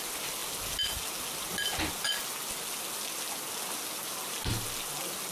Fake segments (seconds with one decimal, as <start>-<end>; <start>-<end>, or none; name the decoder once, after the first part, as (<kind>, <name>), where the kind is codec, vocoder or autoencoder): none